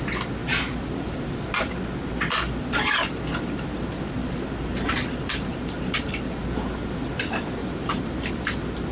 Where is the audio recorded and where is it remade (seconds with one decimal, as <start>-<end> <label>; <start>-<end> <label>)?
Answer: 0.0-0.4 recorded; 0.4-1.3 remade; 1.3-4.2 recorded; 4.2-6.4 remade; 6.4-7.6 recorded; 7.6-8.4 remade; 8.4-8.9 recorded